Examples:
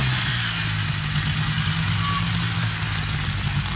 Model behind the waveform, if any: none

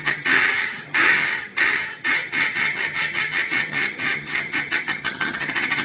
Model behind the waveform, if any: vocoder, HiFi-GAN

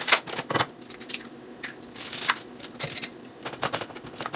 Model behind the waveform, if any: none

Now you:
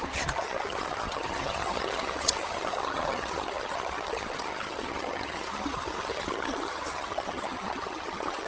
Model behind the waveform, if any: vocoder, HiFi-GAN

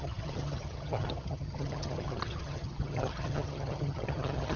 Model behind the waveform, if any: vocoder, HiFi-GAN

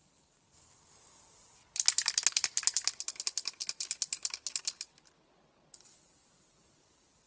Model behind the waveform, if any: none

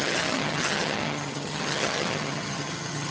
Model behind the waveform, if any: vocoder, HiFi-GAN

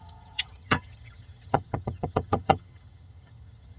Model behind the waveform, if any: vocoder, HiFi-GAN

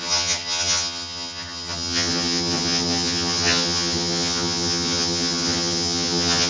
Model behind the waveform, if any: vocoder, HiFi-GAN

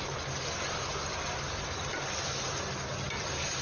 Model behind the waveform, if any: none